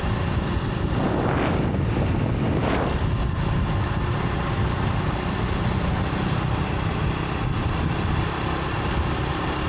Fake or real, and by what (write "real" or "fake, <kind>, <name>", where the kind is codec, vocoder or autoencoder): real